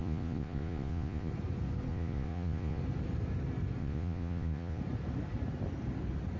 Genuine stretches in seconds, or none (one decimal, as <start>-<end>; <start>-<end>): 1.3-1.9; 2.8-3.8; 4.8-6.4